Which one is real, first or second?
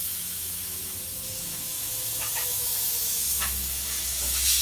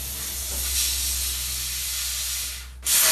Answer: second